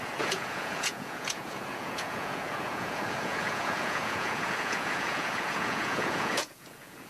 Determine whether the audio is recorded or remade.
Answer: remade